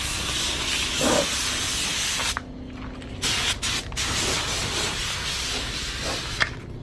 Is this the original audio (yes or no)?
yes